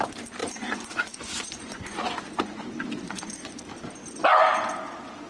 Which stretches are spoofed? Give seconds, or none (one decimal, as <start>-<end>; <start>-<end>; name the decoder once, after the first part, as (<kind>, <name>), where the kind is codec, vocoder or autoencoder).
0.4-3.6 (vocoder, Vocos)

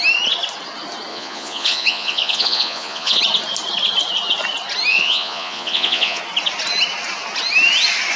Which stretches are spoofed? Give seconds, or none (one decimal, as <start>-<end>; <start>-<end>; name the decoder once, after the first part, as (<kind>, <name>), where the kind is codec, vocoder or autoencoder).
1.1-3.2 (vocoder, Vocos); 4.9-6.2

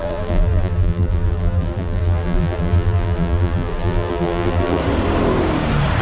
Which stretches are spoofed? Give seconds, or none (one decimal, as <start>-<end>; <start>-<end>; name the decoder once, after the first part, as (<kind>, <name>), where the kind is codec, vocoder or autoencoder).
0.0-4.8 (vocoder, BigVGAN v2)

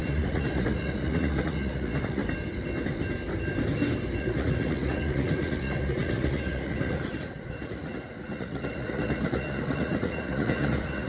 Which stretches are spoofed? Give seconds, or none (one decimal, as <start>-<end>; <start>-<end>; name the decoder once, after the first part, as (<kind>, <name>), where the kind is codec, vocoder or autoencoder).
0.0-2.2 (vocoder, Vocos); 4.2-11.1

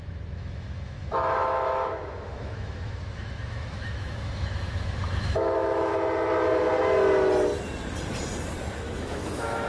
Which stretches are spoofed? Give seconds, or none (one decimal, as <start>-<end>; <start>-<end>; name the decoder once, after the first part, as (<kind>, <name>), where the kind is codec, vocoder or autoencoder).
0.0-5.9 (autoencoder, DAC-VAE); 8.8-9.7

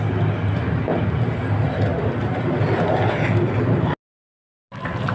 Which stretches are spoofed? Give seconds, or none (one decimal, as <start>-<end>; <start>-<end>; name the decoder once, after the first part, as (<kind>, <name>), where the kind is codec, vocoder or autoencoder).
none

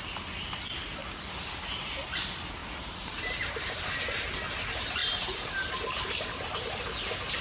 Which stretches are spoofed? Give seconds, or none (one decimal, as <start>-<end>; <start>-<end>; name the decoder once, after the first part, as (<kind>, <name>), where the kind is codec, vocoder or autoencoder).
2.6-4.0 (vocoder, BigVGAN v2); 5.0-5.7